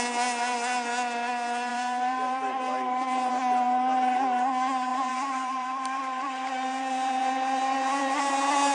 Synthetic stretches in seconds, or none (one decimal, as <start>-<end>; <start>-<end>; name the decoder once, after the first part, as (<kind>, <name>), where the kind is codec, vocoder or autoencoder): 1.7-3.3 (vocoder, BigVGAN v2); 4.9-8.2